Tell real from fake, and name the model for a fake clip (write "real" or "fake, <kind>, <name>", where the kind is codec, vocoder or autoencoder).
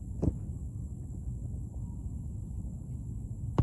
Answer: real